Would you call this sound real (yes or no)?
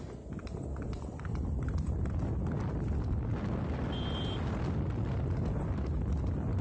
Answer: yes